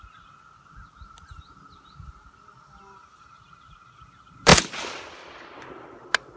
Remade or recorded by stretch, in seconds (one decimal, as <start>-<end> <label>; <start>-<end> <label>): 0.0-6.4 recorded